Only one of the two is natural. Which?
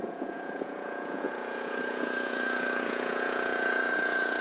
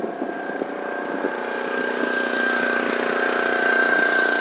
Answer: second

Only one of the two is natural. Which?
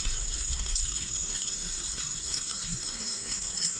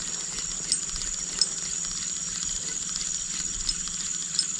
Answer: second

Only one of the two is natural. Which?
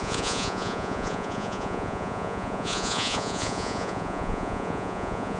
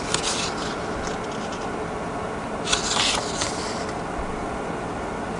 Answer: second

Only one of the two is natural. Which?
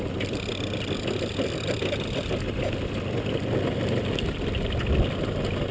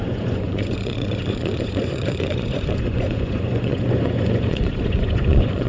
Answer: first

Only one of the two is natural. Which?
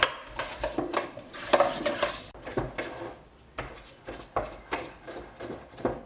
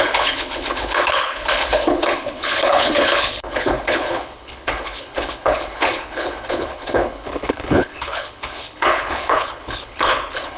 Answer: first